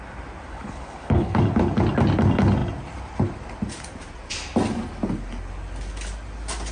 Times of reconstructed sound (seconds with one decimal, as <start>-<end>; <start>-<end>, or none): 0.5-1.4